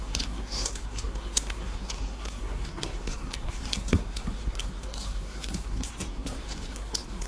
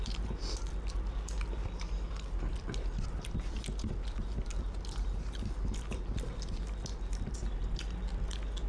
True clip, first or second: second